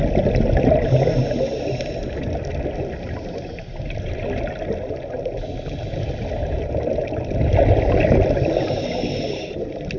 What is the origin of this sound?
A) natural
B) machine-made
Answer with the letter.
A